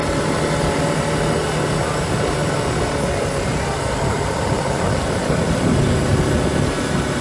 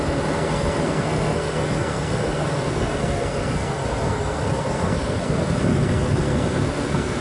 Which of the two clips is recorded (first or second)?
first